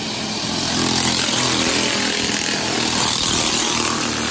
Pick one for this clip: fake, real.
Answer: real